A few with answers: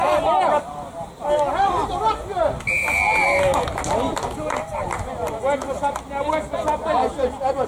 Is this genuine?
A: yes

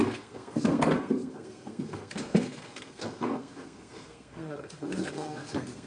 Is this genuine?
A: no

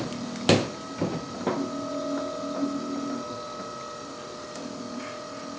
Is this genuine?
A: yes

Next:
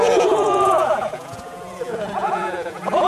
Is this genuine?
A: no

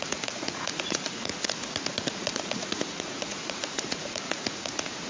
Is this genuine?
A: no